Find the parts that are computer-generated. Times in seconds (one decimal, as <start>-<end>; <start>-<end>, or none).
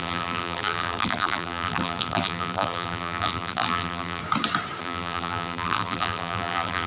0.0-4.2; 4.8-6.9